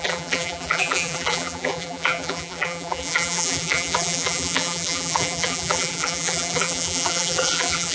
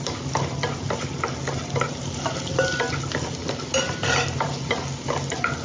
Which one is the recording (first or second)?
second